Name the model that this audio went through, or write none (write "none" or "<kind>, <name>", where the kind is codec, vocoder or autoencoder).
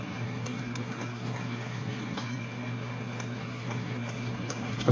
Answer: codec, SNAC